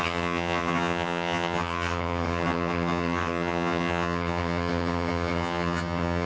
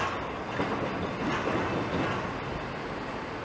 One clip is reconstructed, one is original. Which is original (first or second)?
second